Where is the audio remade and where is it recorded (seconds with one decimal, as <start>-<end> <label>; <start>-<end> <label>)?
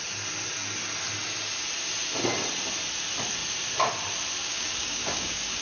0.0-4.4 recorded; 4.4-5.6 remade